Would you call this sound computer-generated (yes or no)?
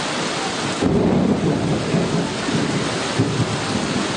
no